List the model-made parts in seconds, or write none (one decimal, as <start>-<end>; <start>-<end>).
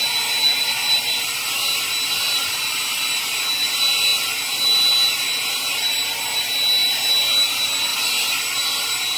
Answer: none